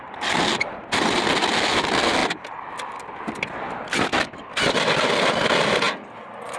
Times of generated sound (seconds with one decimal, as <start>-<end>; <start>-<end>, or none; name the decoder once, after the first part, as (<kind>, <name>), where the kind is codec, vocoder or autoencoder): none